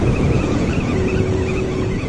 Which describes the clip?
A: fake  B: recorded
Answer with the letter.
A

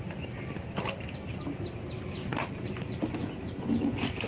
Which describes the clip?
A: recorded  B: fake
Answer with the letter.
A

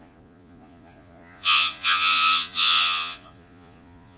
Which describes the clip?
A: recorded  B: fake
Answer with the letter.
B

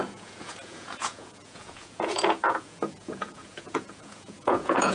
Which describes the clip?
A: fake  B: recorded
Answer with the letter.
A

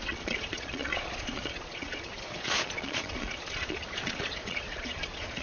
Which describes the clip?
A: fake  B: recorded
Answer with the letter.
A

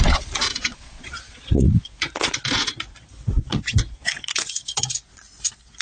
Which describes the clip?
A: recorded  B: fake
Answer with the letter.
B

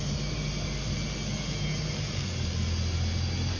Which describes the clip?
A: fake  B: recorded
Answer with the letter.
B